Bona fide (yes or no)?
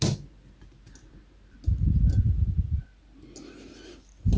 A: yes